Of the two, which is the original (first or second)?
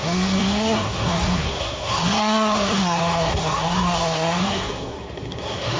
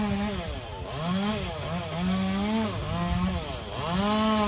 second